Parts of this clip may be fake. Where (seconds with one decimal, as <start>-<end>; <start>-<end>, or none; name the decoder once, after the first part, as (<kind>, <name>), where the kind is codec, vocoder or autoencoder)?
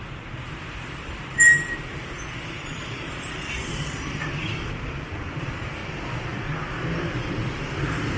0.0-5.8 (vocoder, BigVGAN v2)